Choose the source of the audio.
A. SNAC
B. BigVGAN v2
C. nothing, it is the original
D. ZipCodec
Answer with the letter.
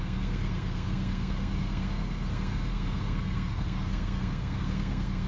A